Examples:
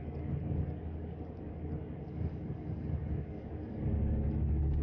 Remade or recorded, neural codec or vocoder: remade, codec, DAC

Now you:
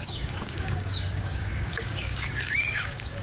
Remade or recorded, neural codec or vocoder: remade, codec, DAC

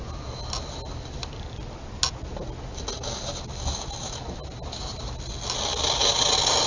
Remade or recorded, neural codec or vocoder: recorded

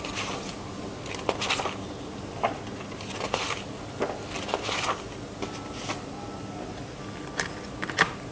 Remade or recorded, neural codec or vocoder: recorded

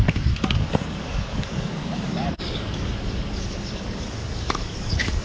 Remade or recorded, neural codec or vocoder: remade, codec, DAC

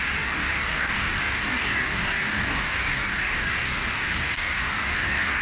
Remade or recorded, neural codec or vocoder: remade, codec, DAC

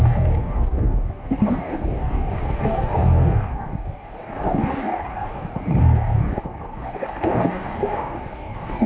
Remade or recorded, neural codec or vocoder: remade, codec, DAC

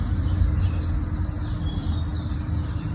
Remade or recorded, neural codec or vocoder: recorded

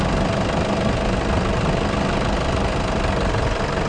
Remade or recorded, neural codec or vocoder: recorded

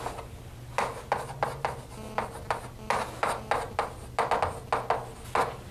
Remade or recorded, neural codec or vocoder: recorded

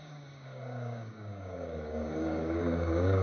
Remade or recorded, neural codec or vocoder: remade, codec, DAC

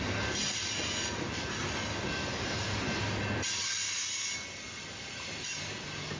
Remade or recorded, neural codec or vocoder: recorded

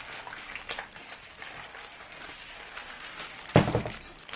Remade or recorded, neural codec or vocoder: recorded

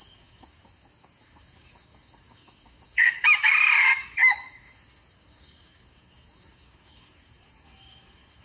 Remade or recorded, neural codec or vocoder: remade, codec, DAC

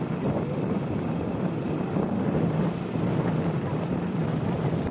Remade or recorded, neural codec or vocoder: recorded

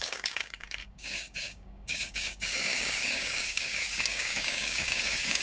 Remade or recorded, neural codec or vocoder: remade, codec, DAC